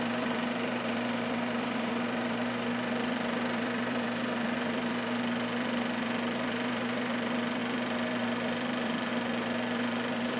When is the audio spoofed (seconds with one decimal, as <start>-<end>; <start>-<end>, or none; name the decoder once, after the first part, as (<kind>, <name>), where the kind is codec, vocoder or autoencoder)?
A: 0.0-10.4 (vocoder, BigVGAN v2)